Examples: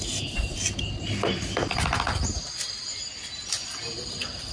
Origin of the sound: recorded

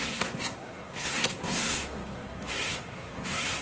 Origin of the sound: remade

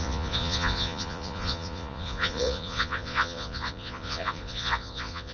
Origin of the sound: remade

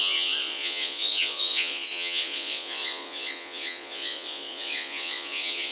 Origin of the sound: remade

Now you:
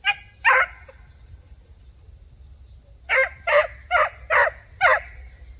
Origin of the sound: recorded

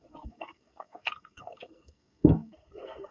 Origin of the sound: remade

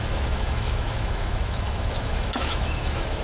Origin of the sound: remade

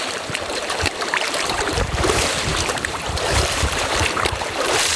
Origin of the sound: remade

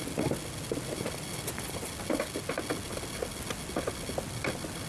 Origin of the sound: recorded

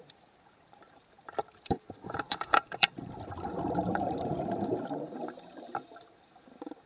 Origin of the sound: remade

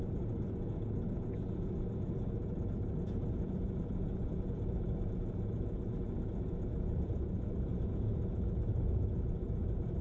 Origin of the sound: remade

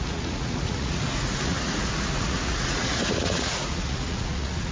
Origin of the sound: remade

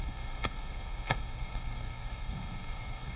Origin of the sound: remade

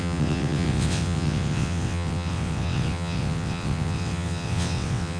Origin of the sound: remade